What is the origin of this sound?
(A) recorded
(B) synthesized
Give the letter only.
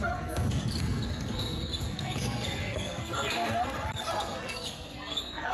B